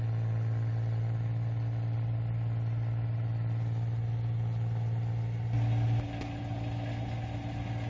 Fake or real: real